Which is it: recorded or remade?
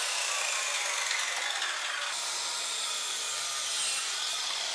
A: recorded